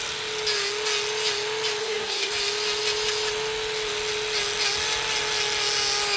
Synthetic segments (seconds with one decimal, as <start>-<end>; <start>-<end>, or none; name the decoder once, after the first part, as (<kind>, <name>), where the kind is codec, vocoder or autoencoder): 1.8-2.3 (codec, SNAC)